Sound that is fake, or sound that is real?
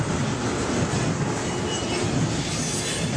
real